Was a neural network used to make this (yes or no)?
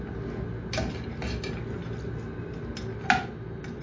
no